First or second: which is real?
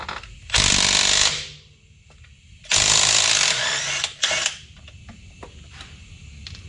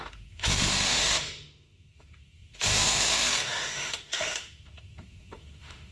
first